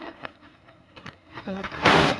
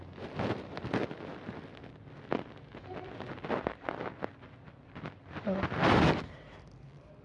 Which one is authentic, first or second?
second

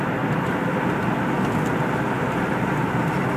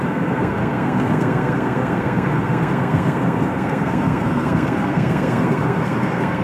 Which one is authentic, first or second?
first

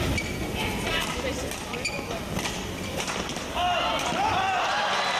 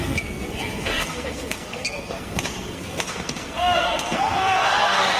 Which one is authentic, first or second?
first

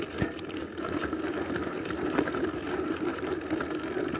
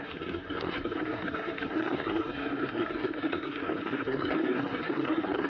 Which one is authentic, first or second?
first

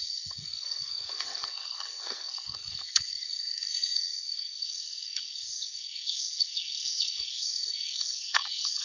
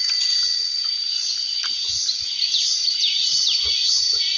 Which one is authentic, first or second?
second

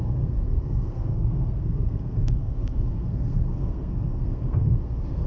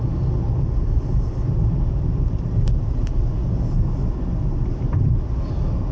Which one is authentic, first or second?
second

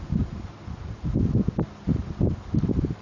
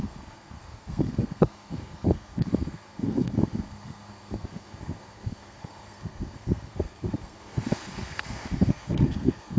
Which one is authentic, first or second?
first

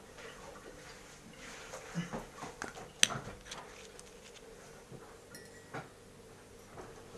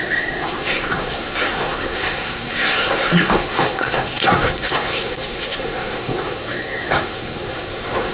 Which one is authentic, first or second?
first